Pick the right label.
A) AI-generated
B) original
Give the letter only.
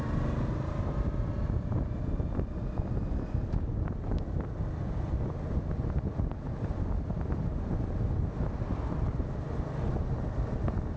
B